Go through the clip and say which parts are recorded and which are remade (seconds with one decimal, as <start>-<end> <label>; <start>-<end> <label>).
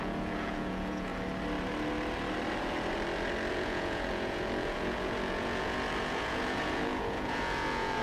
0.0-1.1 remade; 1.1-3.5 recorded; 3.5-8.0 remade